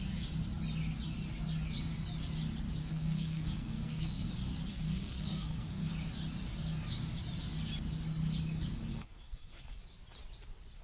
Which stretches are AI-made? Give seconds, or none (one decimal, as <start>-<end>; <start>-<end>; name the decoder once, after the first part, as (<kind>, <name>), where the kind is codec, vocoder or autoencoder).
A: 2.8-4.3 (codec, SNAC); 4.7-5.9; 8.9-9.8